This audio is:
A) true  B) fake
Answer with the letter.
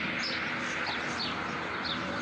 A